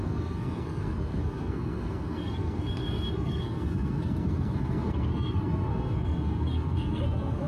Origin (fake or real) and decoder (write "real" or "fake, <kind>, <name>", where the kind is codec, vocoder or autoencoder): fake, codec, SNAC